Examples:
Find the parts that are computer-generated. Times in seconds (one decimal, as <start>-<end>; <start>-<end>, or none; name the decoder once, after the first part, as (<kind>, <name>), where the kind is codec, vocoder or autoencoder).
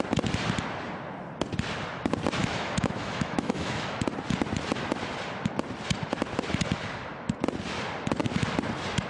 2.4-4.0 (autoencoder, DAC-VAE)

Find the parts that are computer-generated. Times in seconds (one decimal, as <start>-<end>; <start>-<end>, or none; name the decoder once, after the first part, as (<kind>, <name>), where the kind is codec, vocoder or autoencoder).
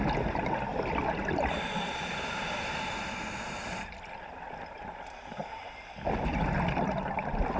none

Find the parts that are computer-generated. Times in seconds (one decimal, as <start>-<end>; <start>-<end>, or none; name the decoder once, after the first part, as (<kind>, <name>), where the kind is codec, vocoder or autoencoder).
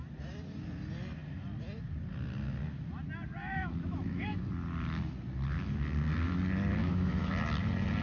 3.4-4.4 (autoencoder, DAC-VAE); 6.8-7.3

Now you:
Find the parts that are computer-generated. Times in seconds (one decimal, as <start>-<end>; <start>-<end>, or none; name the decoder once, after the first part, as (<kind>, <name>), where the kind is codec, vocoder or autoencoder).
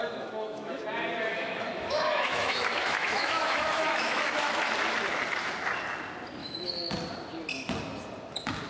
0.0-0.8 (autoencoder, DAC-VAE); 1.3-4.7; 6.4-6.9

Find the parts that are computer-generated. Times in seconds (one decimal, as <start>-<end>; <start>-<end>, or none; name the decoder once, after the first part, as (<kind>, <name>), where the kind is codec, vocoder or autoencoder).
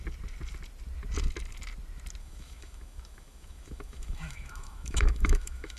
2.2-5.8 (autoencoder, DAC-VAE)